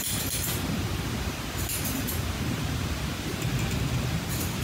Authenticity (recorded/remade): recorded